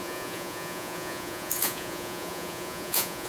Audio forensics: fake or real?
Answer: fake